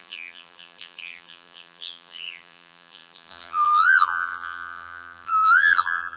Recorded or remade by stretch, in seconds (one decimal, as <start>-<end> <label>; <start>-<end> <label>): 0.0-6.2 remade